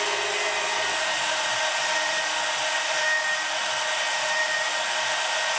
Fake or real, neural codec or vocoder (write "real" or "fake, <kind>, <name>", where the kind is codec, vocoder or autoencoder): real